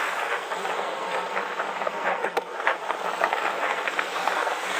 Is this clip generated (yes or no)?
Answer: yes